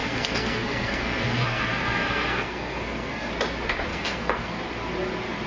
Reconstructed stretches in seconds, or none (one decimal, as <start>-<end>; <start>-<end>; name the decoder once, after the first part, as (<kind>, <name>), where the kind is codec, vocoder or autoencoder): 0.0-3.3 (codec, SNAC); 3.9-4.6